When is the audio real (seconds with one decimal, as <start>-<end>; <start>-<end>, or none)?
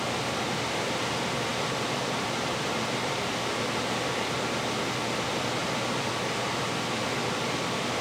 0.0-5.6; 6.1-8.0